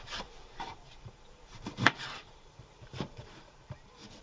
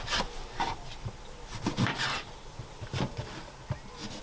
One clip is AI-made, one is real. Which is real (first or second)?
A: second